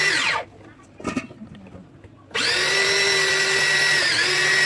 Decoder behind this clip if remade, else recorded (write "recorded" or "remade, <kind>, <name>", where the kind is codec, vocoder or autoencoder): recorded